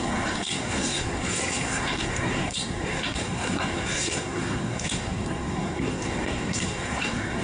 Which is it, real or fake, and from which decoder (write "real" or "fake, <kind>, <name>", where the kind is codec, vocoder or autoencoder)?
fake, codec, SNAC